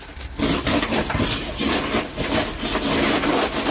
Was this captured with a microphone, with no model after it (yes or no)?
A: yes